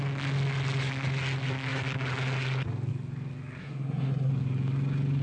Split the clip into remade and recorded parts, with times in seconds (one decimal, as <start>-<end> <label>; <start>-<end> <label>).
0.0-3.6 recorded; 3.6-4.3 remade; 4.3-5.2 recorded